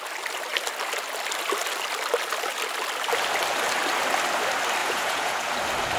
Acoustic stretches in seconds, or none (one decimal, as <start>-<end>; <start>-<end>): 0.0-4.8; 5.5-6.0